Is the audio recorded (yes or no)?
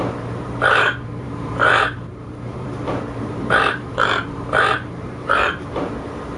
no